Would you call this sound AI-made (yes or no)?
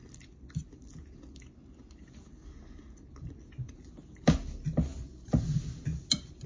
no